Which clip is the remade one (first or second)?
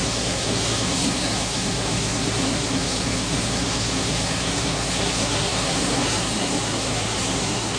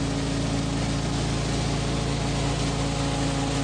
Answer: first